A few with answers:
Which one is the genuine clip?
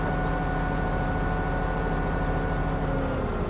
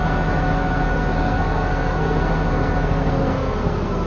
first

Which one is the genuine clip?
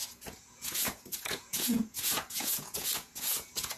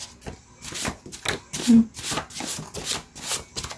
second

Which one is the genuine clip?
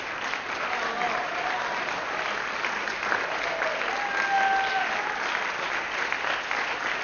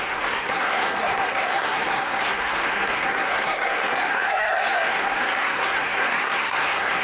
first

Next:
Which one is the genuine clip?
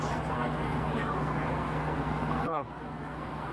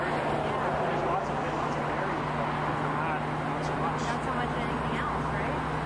second